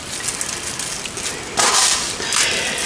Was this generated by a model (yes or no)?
no